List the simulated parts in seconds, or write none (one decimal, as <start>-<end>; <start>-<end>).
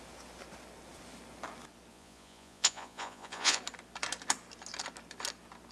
1.9-3.6